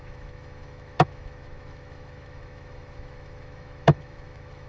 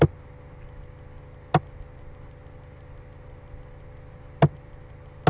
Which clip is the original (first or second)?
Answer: second